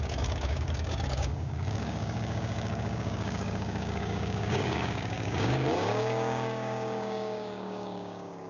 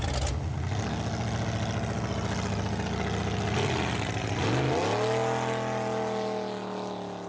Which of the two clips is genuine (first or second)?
second